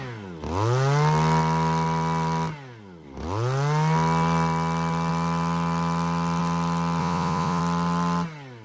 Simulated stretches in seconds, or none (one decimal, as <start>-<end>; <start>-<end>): 7.0-7.6